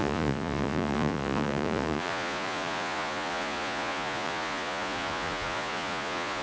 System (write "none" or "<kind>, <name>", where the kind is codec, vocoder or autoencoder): vocoder, Vocos